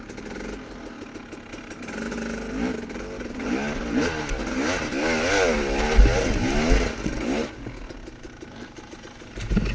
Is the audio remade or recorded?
recorded